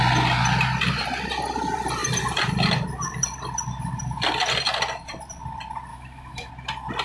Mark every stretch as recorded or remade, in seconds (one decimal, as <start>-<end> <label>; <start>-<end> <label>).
0.0-5.9 recorded; 5.9-6.5 remade; 6.5-7.0 recorded

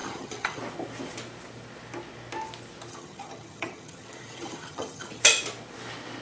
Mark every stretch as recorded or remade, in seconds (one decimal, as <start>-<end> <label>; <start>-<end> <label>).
0.0-0.6 remade; 0.6-2.9 recorded; 2.9-5.2 remade; 5.2-6.2 recorded

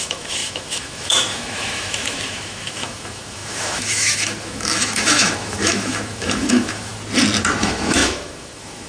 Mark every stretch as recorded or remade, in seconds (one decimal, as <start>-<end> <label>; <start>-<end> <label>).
0.0-6.9 remade; 6.9-7.6 recorded; 7.6-8.9 remade

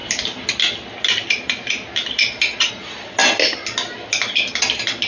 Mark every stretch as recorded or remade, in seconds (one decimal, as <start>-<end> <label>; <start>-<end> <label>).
0.0-5.1 recorded

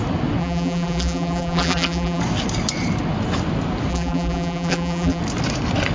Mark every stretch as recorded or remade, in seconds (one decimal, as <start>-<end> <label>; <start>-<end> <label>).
0.0-0.4 recorded; 0.4-2.2 remade; 2.2-3.9 recorded; 3.9-5.2 remade; 5.2-5.9 recorded